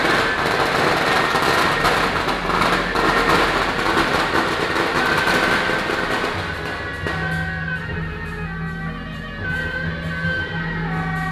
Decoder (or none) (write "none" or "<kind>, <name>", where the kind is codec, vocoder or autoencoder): none